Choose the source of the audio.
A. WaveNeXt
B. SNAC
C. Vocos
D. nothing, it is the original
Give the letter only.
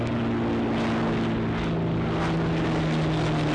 D